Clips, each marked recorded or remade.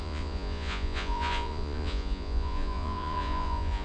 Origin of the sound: remade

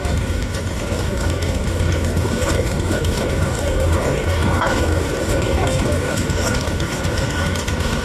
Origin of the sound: remade